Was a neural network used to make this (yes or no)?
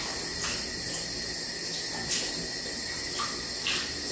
no